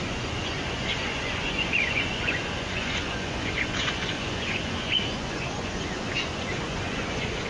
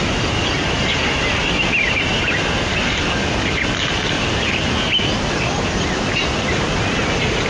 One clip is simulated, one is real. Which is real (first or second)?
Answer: second